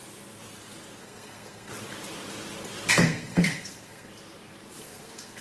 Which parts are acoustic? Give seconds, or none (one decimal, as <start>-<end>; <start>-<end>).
0.0-1.0; 1.7-2.9; 4.1-4.8